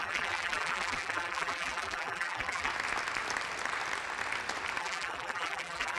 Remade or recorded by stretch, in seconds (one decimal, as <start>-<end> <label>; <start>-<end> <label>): 0.0-2.7 remade; 2.7-4.8 recorded; 4.8-6.0 remade